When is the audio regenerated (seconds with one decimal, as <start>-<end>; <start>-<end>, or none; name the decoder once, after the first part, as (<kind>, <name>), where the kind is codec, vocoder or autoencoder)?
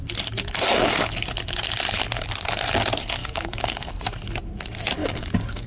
3.2-3.9 (codec, DAC); 5.0-5.7